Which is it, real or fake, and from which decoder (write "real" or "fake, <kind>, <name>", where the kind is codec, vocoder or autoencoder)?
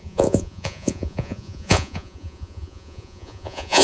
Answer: fake, vocoder, Vocos